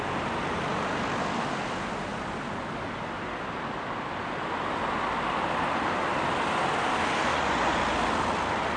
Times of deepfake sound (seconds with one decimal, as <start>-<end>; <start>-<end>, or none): 7.3-7.8